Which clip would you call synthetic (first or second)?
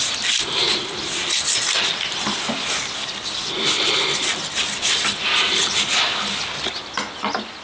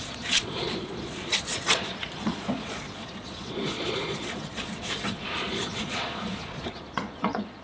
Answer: second